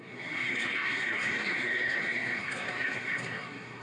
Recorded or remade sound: remade